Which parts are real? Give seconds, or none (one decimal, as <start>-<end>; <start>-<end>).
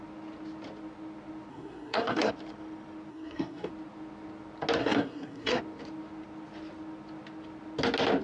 0.0-1.5; 2.3-3.1; 3.7-4.8; 5.6-8.2